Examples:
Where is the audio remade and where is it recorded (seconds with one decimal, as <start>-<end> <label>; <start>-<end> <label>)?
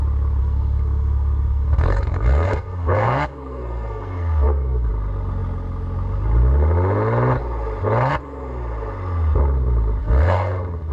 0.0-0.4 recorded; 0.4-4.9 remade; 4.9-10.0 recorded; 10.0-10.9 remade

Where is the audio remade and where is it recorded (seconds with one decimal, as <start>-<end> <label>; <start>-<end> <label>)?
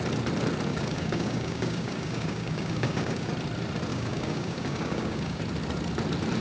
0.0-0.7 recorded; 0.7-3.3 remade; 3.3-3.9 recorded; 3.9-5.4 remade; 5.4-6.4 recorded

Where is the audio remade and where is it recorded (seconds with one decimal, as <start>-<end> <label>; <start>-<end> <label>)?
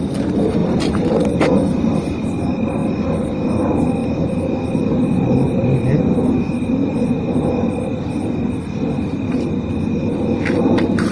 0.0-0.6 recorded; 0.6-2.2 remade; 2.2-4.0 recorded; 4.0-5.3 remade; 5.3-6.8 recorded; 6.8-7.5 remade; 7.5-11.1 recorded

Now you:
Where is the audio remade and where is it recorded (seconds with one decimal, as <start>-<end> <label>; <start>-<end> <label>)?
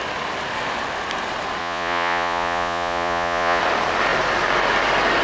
0.0-1.6 recorded; 1.6-3.6 remade; 3.6-5.2 recorded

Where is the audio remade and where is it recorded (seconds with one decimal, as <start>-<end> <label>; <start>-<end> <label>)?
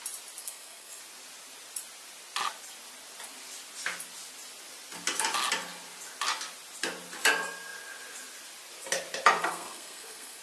0.0-0.4 recorded; 0.4-1.0 remade; 1.0-9.4 recorded; 9.4-10.4 remade